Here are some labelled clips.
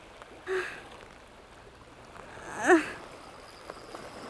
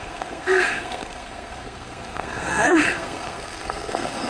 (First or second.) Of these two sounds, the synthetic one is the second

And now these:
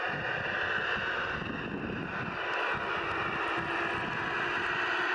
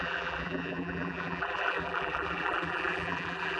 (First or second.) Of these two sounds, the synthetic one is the second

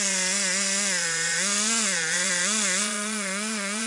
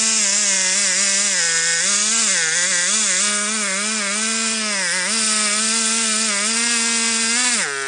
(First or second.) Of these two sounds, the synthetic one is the first